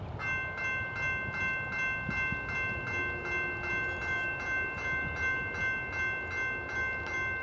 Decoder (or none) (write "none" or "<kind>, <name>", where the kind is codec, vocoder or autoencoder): none